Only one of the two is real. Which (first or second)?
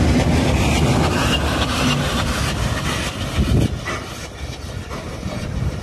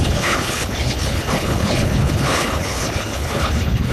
first